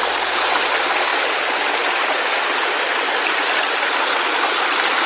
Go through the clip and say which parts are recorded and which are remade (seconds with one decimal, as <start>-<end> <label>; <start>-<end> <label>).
0.0-5.1 recorded